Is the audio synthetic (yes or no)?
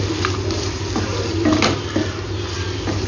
no